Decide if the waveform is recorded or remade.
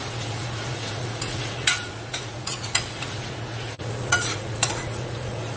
remade